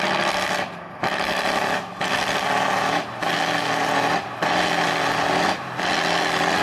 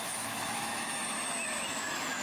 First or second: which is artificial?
second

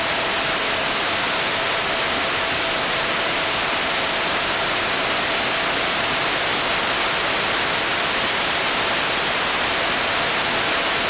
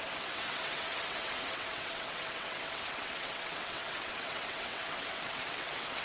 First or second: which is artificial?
second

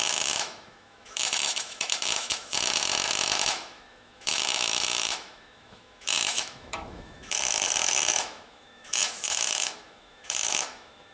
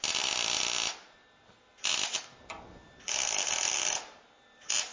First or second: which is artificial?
first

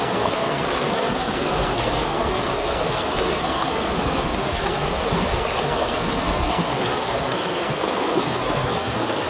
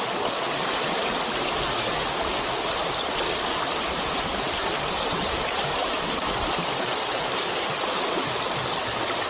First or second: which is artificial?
first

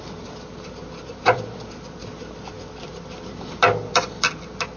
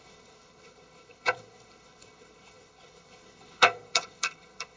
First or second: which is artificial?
second